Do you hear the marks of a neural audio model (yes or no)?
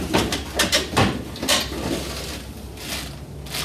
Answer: no